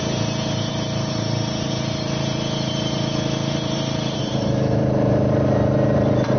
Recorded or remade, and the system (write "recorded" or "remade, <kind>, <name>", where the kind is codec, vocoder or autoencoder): remade, vocoder, BigVGAN v2